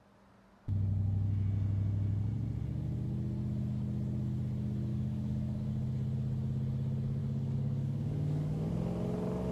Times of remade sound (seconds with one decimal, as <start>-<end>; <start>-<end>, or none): 4.9-5.7; 7.2-8.7